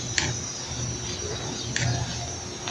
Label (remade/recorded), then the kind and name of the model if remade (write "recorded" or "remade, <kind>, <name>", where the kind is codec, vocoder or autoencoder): recorded